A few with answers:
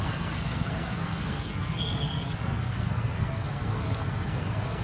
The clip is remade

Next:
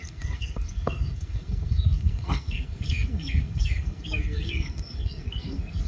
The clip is remade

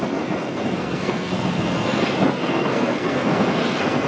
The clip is remade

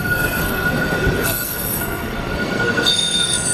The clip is remade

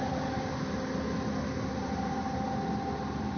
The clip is recorded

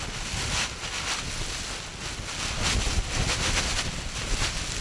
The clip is recorded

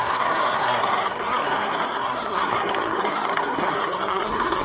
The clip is remade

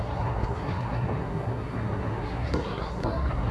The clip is remade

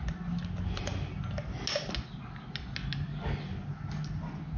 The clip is recorded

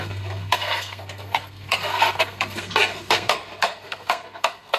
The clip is remade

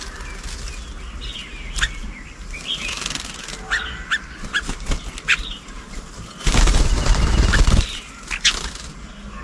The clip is recorded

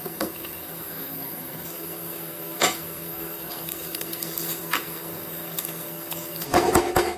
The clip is remade